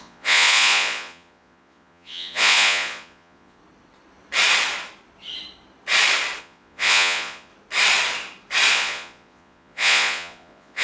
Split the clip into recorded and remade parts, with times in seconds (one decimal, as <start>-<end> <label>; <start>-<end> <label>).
0.0-3.6 remade; 3.6-6.4 recorded; 6.4-7.5 remade; 7.5-8.7 recorded; 8.7-10.8 remade